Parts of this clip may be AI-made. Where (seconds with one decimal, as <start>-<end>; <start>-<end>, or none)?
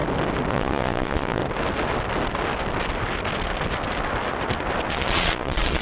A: 0.5-1.4; 4.9-5.8